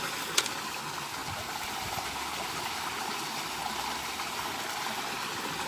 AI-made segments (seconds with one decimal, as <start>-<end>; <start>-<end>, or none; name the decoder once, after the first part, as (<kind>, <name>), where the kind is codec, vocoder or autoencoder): none